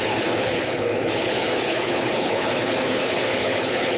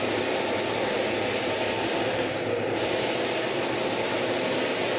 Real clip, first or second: second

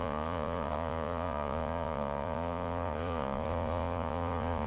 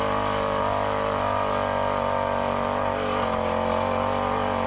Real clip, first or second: second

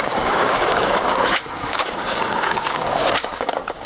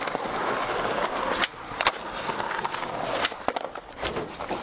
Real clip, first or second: second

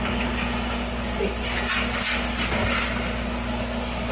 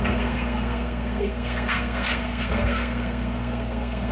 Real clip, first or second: first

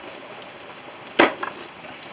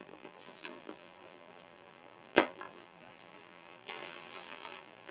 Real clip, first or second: first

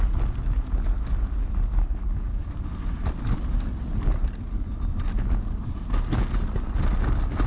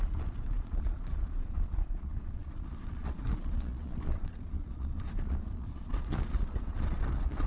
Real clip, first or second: first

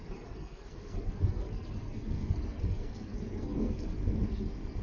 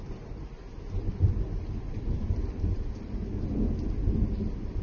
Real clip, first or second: second